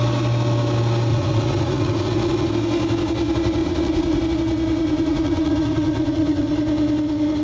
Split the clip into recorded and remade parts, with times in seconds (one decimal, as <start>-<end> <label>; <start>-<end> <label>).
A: 0.0-1.1 recorded; 1.1-2.5 remade; 2.5-3.6 recorded; 3.6-4.2 remade; 4.2-4.8 recorded; 4.8-6.6 remade; 6.6-7.4 recorded